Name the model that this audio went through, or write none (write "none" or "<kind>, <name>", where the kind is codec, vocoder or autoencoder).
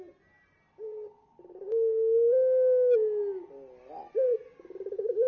none